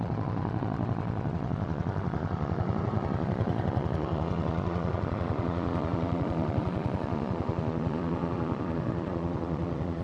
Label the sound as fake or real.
fake